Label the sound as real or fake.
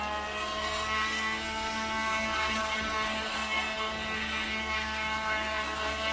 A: fake